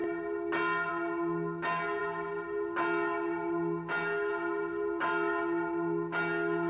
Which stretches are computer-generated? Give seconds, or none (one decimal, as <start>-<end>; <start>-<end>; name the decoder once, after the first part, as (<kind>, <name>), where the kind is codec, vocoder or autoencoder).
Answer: none